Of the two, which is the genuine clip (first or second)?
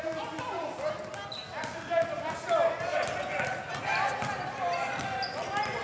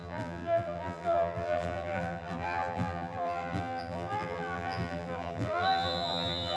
first